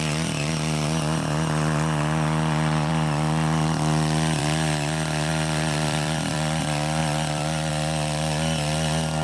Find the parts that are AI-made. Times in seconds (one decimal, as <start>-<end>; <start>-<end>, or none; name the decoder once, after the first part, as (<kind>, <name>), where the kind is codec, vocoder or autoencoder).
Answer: 5.3-6.6 (vocoder, BigVGAN v2); 7.0-7.7